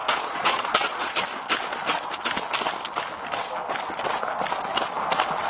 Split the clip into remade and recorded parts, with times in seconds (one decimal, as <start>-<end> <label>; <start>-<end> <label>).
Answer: 0.0-1.2 remade; 1.2-5.5 recorded